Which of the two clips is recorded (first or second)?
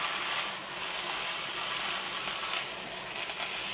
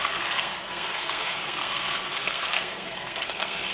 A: first